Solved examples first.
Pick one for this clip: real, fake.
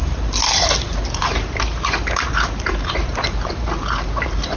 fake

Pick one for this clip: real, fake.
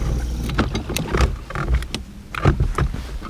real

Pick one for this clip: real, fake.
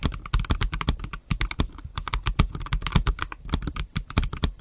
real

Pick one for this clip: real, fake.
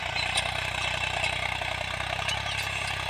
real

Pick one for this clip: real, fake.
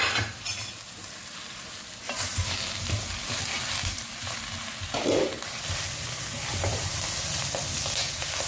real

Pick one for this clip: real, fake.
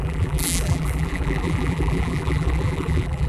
fake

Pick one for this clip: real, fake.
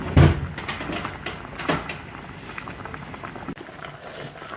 real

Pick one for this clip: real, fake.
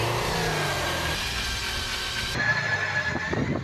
real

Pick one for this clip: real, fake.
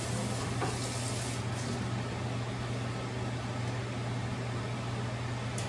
real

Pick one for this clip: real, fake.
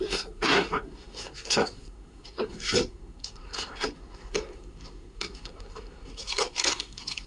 fake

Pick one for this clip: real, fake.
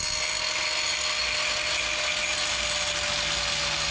real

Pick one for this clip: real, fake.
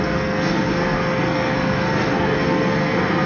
fake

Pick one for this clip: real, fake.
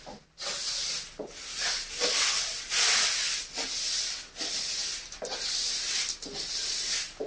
real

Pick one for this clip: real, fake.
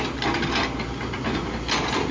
real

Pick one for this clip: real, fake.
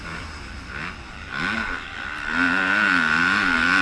real